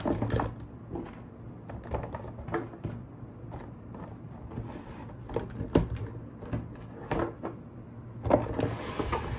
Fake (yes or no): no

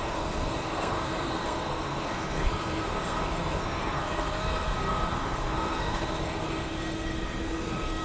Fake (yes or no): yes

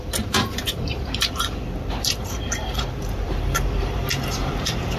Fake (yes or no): yes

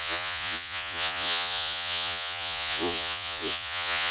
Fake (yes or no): yes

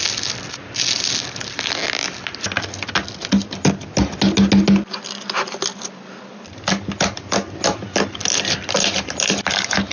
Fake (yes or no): no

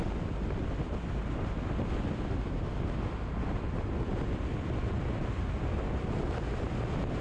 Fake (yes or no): no